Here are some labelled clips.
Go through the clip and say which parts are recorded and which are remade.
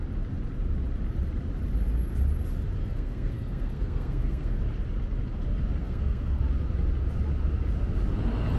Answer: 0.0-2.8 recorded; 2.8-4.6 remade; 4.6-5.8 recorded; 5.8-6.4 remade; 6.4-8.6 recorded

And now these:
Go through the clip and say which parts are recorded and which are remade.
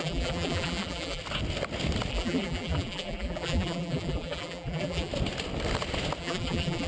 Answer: 0.0-1.2 remade; 1.2-2.1 recorded; 2.1-5.1 remade; 5.1-6.2 recorded; 6.2-6.9 remade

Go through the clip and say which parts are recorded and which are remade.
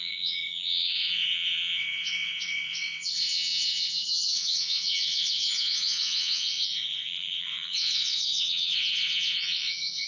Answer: 0.0-10.1 remade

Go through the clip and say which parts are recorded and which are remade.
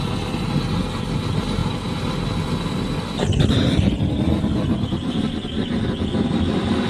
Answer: 0.0-6.9 recorded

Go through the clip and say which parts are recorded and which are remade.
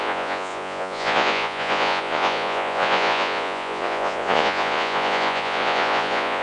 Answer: 0.0-6.4 remade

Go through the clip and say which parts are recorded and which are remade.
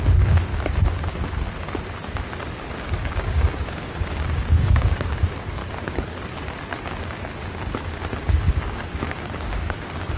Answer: 0.0-0.5 remade; 0.5-2.7 recorded; 2.7-5.6 remade; 5.6-6.8 recorded; 6.8-7.3 remade; 7.3-8.2 recorded; 8.2-10.2 remade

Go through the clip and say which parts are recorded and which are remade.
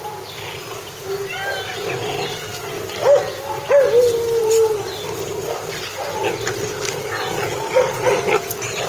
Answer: 0.0-8.9 recorded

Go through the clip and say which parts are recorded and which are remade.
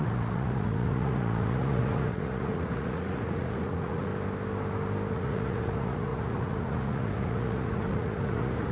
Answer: 0.0-4.1 remade; 4.1-5.1 recorded; 5.1-8.7 remade